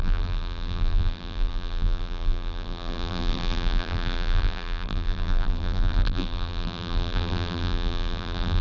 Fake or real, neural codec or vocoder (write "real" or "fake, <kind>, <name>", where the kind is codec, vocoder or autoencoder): fake, vocoder, BigVGAN v2